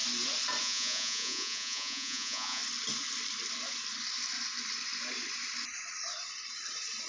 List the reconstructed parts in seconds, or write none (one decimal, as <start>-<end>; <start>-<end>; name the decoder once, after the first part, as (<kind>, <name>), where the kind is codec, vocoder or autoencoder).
0.6-2.6 (vocoder, Vocos)